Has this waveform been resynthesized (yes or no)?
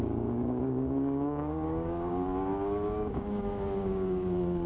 yes